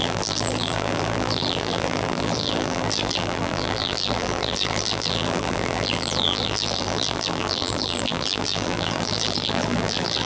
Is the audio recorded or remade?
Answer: remade